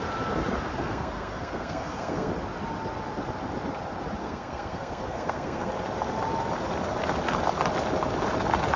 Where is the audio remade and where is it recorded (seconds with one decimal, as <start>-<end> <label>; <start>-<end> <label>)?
0.0-0.7 recorded; 0.7-2.3 remade; 2.3-4.2 recorded; 4.2-5.7 remade; 5.7-8.8 recorded